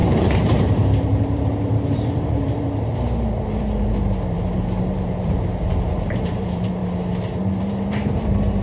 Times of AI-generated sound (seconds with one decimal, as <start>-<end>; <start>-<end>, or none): 0.0-6.8; 7.4-8.6